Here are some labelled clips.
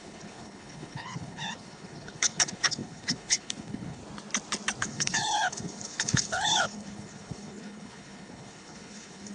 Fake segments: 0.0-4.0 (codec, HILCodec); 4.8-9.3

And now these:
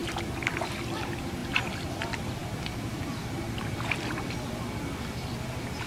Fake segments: none

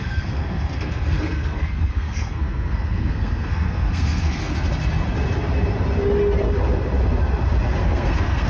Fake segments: 0.0-4.5 (codec, SNAC); 7.8-8.5

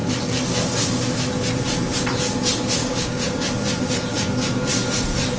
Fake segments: 2.8-3.4 (codec, DAC); 4.1-4.7